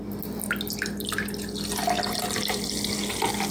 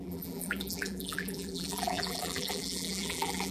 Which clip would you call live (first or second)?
first